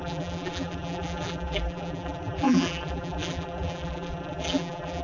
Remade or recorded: remade